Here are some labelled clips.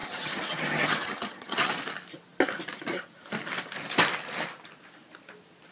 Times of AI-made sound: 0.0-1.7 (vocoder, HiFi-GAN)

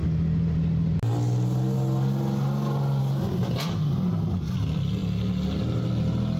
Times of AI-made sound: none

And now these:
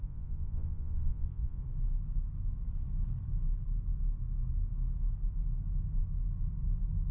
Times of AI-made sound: 0.0-1.6 (vocoder, Vocos)

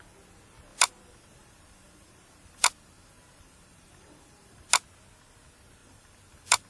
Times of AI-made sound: 0.7-4.7 (vocoder, BigVGAN v2); 5.8-6.7

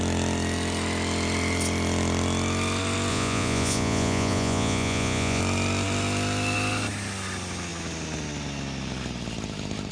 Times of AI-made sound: 3.1-5.4 (vocoder, Vocos)

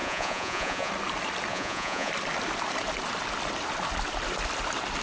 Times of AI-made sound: 0.0-0.9 (vocoder, Vocos); 1.5-2.1